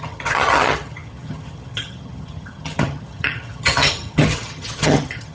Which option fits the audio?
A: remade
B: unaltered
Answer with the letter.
A